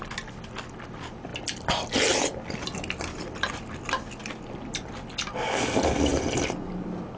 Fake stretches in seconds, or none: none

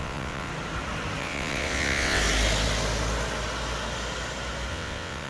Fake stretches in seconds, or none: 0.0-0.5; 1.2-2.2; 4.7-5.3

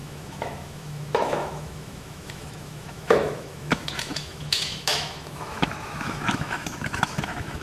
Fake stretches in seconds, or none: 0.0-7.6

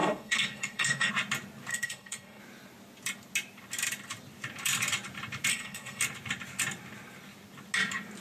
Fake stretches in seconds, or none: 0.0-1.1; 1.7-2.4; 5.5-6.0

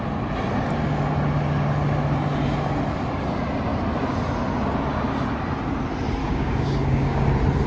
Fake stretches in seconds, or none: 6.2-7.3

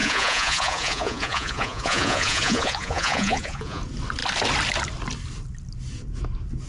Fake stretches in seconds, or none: 0.0-3.8

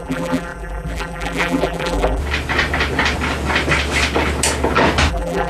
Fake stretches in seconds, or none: 0.0-2.2; 5.1-5.5